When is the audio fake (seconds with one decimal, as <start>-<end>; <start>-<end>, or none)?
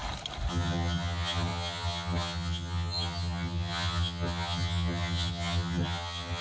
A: 0.5-6.4